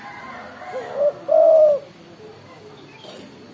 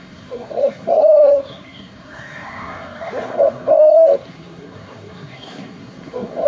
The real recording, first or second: first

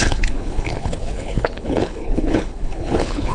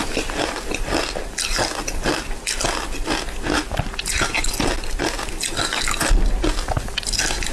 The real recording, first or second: second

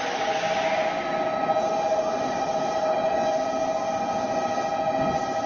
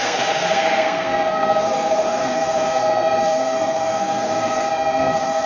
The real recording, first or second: first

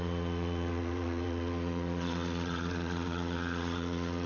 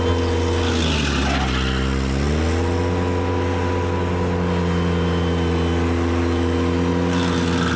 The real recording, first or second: second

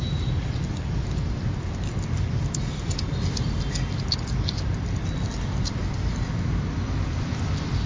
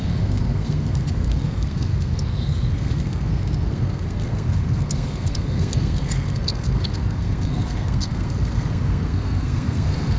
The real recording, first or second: first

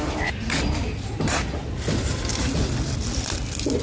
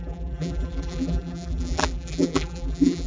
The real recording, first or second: first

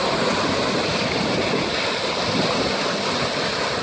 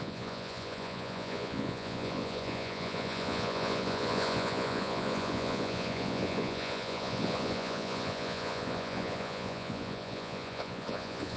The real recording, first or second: first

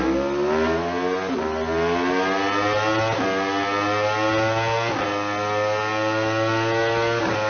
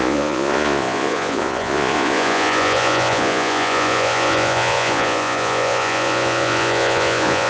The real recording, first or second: first